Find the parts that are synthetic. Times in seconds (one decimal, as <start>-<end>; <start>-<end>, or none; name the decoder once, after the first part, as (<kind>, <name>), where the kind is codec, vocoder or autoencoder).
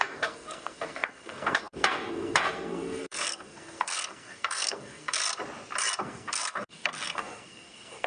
0.0-5.2 (codec, SNAC); 6.0-8.1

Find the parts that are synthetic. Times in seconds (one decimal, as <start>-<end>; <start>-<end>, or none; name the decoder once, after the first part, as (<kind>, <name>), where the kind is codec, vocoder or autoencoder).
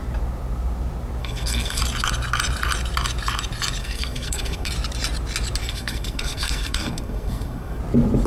1.2-1.8 (codec, SNAC); 3.8-4.7; 5.6-7.8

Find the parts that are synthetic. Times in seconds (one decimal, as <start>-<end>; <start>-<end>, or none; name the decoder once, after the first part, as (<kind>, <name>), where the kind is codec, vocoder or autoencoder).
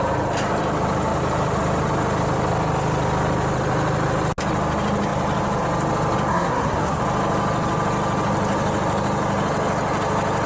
6.3-7.0 (codec, SNAC)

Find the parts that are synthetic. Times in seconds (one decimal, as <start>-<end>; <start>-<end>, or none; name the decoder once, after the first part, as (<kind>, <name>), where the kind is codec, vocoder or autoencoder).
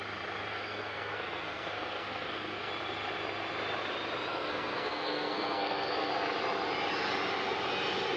0.5-2.7 (codec, SNAC); 4.3-6.1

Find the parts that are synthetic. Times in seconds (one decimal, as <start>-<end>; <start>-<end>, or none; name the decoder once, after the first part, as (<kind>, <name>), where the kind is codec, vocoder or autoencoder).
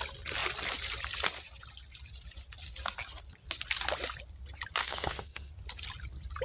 4.8-5.5 (codec, SNAC)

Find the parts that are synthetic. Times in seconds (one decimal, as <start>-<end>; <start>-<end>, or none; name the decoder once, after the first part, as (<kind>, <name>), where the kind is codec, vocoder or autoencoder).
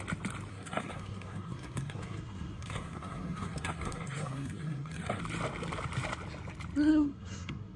0.5-5.2 (codec, SNAC); 6.9-7.8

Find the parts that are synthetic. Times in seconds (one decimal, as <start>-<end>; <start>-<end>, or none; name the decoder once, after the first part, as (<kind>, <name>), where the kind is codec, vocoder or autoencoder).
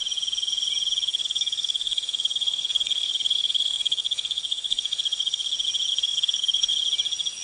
1.1-5.5 (codec, SNAC); 5.9-6.7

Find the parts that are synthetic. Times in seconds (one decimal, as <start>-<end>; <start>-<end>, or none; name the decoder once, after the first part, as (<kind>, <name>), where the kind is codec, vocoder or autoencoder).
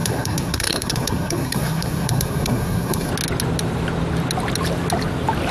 0.0-3.1 (codec, SNAC)